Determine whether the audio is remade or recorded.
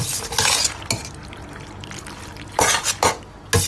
recorded